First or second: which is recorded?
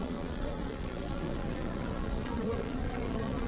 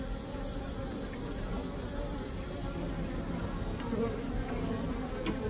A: second